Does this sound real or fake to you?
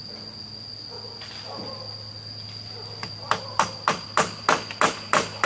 real